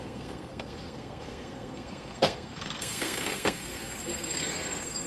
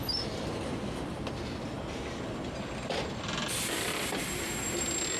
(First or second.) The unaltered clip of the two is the second